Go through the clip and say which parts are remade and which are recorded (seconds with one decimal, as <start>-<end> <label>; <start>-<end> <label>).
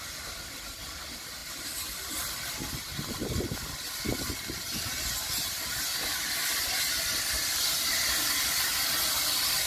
0.0-9.7 recorded